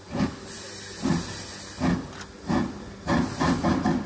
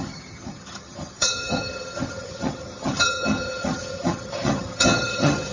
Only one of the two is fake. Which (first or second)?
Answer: second